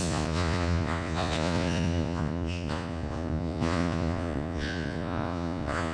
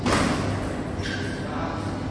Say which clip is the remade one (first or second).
first